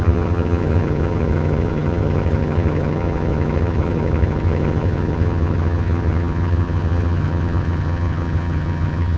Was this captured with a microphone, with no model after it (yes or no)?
no